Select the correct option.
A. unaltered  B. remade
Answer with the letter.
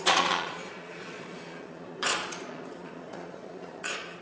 B